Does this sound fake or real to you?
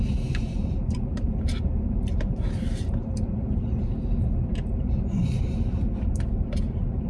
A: fake